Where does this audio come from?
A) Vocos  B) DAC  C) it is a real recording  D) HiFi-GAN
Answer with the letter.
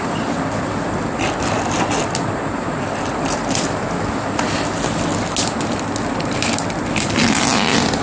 C